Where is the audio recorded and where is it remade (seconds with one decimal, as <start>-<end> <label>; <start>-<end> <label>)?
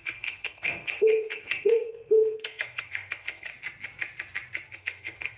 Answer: 0.0-3.5 remade; 3.5-4.8 recorded; 4.8-5.4 remade